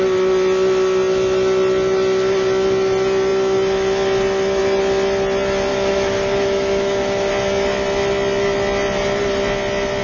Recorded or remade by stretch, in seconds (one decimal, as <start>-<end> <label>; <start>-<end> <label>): 0.0-5.7 recorded; 5.7-7.3 remade; 7.3-10.0 recorded